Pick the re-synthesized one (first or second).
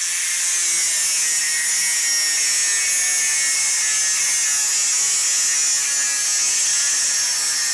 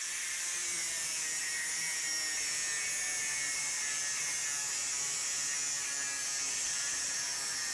second